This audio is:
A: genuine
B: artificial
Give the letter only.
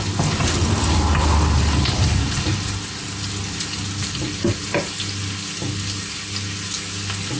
A